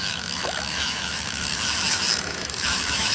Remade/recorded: remade